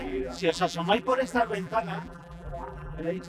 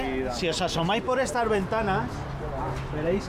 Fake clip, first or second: first